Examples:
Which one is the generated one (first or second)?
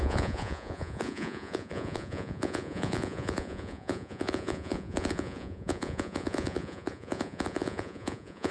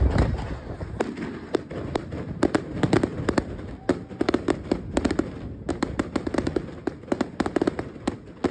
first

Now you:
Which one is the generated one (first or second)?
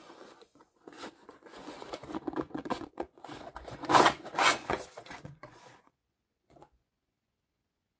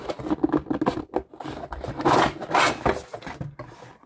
first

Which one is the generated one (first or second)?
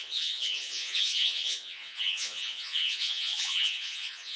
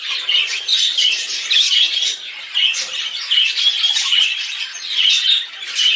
first